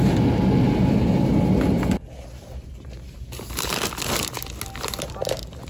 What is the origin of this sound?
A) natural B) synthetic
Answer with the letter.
A